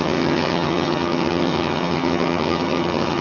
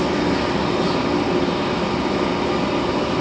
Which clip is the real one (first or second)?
second